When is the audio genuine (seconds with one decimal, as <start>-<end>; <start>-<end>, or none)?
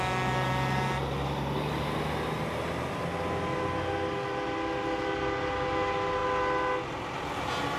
0.0-7.8